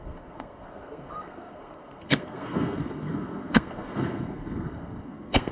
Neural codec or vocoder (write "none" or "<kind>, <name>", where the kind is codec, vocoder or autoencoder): codec, SNAC